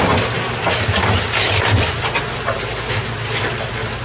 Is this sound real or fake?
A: real